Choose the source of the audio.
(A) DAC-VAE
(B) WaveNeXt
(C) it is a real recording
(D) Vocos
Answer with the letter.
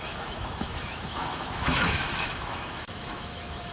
A